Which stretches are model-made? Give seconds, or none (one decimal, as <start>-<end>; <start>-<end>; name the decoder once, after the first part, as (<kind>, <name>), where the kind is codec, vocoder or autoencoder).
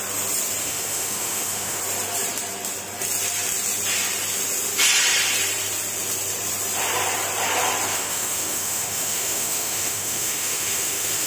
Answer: 0.6-1.8 (autoencoder, DAC-VAE); 7.9-11.3